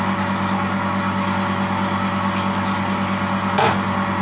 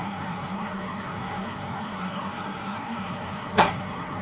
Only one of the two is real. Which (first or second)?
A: first